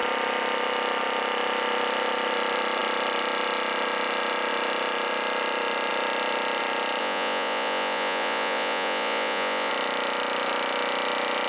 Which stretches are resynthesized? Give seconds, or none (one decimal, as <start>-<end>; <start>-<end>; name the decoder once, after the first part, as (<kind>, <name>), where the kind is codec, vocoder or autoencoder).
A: 7.0-9.7 (vocoder, Vocos)